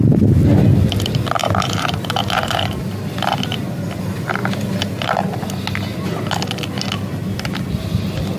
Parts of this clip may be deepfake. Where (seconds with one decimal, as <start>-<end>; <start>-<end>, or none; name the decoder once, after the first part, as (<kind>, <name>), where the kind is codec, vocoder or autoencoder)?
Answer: 1.4-2.9 (vocoder, BigVGAN v2)

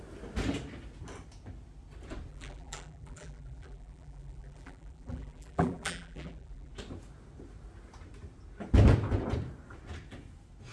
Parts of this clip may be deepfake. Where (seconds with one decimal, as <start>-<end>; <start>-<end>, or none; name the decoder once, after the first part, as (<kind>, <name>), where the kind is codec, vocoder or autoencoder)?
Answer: 2.3-6.7 (vocoder, BigVGAN v2)

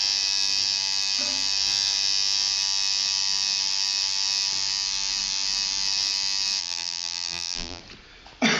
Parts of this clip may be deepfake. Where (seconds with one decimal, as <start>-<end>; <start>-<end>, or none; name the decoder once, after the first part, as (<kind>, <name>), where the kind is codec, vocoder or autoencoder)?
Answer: 6.6-7.8 (vocoder, BigVGAN v2)

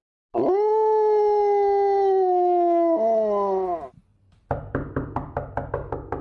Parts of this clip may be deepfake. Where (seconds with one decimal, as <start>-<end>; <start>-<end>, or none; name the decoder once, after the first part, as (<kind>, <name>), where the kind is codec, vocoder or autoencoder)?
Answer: 4.1-5.7 (vocoder, BigVGAN v2)

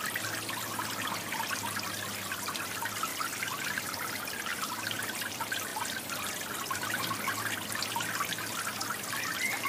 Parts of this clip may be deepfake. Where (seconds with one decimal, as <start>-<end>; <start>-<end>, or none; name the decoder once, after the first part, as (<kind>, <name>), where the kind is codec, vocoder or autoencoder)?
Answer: 3.1-3.7 (vocoder, BigVGAN v2); 4.5-5.0